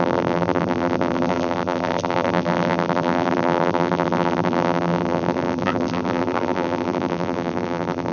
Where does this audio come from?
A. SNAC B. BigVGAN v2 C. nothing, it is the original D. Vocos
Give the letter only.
B